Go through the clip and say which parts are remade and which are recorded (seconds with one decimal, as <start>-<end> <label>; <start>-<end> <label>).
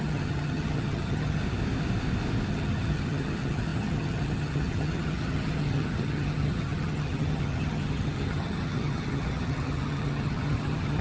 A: 0.0-1.4 remade; 1.4-2.5 recorded; 2.5-11.0 remade